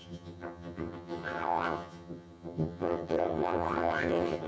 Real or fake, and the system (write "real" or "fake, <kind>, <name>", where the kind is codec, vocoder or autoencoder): fake, vocoder, HiFi-GAN